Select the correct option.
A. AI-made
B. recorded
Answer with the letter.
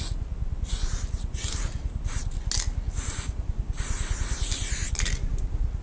B